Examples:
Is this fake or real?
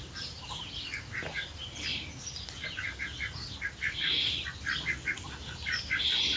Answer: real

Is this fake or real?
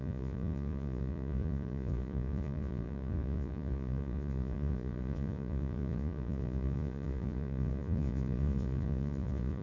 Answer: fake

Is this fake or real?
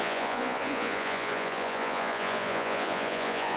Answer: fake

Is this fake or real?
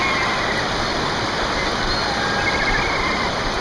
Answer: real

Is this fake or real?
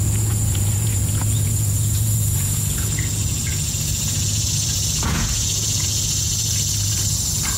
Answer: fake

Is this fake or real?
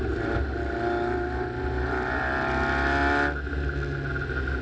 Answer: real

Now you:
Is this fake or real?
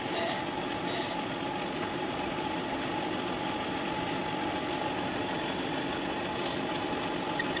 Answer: real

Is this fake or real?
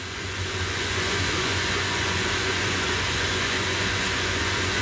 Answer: fake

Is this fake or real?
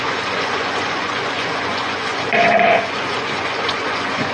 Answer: fake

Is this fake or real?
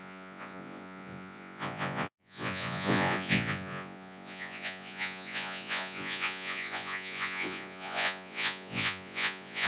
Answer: fake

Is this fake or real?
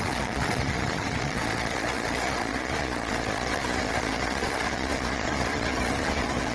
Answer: fake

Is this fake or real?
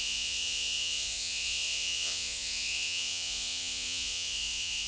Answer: fake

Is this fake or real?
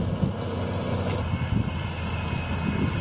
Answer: real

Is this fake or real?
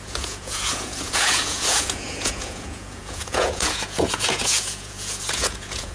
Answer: fake